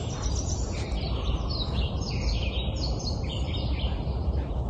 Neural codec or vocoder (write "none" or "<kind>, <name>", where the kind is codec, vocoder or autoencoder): none